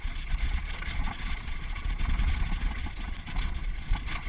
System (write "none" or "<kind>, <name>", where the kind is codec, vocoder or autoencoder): vocoder, Vocos